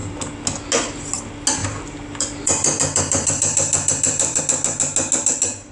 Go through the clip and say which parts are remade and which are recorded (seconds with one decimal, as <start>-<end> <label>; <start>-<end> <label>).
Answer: 0.0-1.6 recorded; 1.6-4.4 remade; 4.4-5.7 recorded